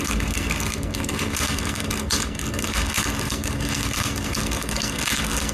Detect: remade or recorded remade